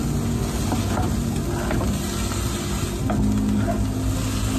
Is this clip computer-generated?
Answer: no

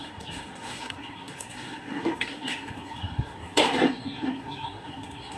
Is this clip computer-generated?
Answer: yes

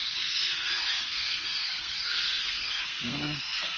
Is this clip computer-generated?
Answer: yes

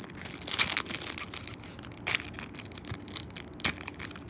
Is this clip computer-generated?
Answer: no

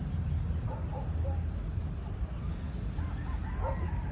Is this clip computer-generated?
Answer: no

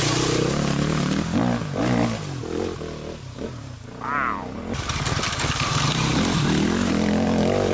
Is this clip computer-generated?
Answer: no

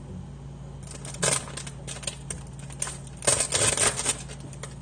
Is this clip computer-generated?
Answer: no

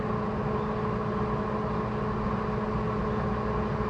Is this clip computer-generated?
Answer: no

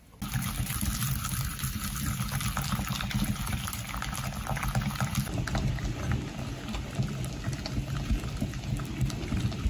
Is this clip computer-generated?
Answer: no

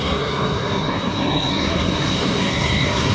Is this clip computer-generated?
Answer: yes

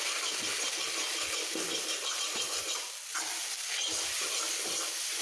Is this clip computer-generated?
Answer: no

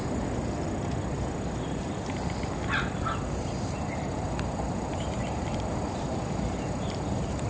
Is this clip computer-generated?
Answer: no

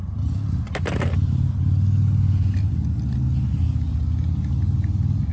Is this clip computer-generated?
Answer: no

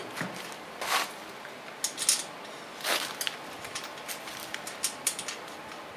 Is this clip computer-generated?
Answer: no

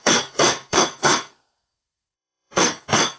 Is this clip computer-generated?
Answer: yes